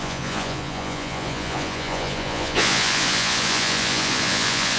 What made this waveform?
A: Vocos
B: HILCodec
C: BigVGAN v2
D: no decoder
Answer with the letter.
A